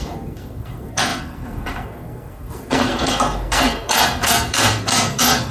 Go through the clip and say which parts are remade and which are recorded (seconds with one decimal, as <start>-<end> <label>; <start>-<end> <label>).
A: 0.0-5.5 remade